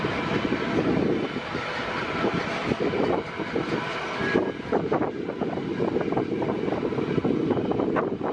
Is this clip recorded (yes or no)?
yes